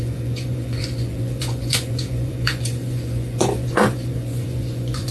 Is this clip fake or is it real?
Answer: fake